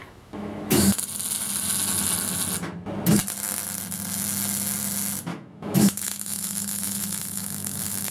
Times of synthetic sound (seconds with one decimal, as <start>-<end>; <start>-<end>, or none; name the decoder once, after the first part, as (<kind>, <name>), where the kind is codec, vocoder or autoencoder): 0.0-1.0 (autoencoder, DAC-VAE); 5.3-8.1

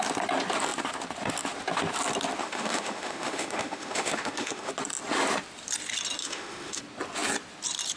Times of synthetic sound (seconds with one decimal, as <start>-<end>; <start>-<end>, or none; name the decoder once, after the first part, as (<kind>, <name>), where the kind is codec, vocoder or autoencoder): 2.4-4.7 (autoencoder, DAC-VAE); 6.2-6.8

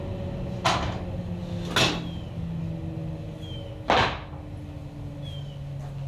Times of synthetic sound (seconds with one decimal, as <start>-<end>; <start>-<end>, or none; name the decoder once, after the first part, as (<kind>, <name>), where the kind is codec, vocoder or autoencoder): none

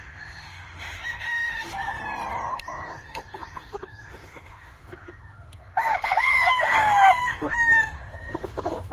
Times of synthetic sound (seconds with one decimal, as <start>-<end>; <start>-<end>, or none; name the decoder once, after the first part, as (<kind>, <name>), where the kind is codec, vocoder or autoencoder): 0.0-2.0 (autoencoder, DAC-VAE); 2.5-8.9